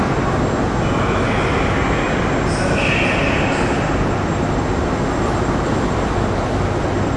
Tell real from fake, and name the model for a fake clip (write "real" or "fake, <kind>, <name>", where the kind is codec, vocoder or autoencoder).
real